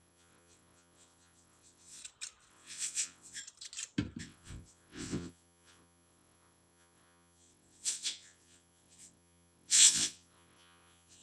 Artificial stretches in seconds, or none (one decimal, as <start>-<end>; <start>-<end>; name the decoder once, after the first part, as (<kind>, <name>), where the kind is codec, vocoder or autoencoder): 0.0-2.0 (vocoder, WaveNeXt); 2.5-3.4; 4.2-11.2